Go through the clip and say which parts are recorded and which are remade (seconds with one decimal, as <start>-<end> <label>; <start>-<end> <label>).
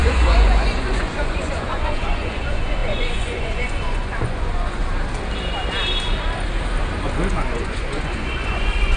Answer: 0.0-4.8 remade; 4.8-7.3 recorded; 7.3-9.0 remade